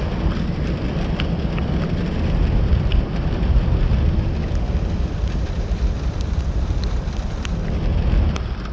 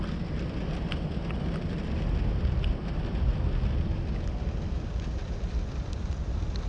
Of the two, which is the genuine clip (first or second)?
second